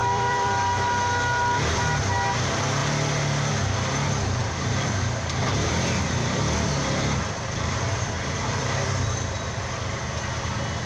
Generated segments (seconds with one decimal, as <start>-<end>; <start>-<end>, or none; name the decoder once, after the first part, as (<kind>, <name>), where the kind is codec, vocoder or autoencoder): 0.0-0.6 (vocoder, BigVGAN v2); 4.4-9.5